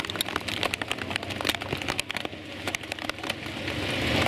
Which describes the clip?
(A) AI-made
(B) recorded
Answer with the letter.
B